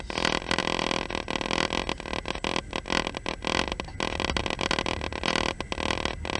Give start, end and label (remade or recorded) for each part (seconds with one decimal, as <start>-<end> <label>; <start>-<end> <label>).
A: 0.0-6.4 recorded